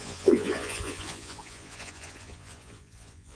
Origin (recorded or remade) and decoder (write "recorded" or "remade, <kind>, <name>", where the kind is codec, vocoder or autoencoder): remade, vocoder, Vocos